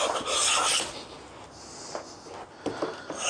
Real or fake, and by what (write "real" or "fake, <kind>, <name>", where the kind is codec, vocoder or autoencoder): real